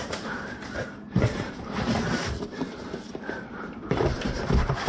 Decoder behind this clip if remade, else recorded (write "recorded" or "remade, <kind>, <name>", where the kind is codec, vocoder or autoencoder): remade, vocoder, BigVGAN v2